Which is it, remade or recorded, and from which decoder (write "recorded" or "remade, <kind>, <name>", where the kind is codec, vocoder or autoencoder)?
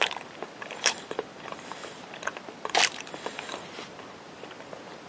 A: remade, vocoder, BigVGAN v2